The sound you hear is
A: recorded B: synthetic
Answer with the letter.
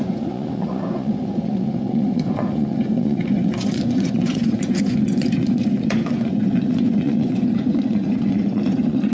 B